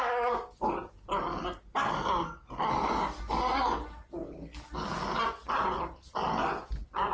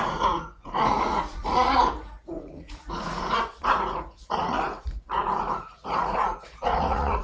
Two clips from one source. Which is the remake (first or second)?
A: second